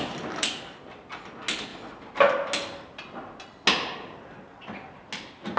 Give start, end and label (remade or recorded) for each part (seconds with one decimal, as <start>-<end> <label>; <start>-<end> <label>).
0.0-5.6 recorded